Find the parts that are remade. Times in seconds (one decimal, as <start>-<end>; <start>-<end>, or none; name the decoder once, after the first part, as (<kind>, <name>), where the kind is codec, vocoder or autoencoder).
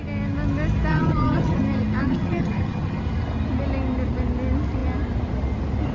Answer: 0.9-1.6 (vocoder, HiFi-GAN); 2.0-3.0